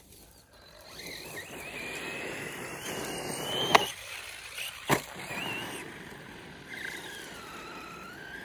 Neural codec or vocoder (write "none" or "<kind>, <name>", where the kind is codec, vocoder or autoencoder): vocoder, BigVGAN v2